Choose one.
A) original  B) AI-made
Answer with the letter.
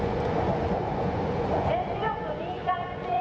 B